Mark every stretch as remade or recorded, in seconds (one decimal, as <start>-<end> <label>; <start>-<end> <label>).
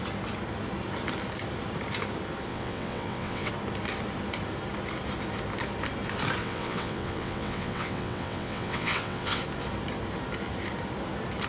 0.0-2.5 recorded; 2.5-3.5 remade; 3.5-6.4 recorded; 6.4-9.4 remade; 9.4-11.5 recorded